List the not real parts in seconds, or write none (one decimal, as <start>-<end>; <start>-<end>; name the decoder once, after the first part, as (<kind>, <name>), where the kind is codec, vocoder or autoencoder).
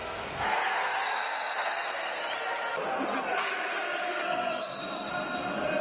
0.0-2.2 (codec, SNAC); 4.1-4.8